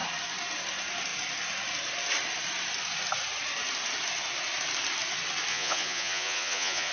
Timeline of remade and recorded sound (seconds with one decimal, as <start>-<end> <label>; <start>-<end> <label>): 0.0-5.5 recorded; 5.5-6.9 remade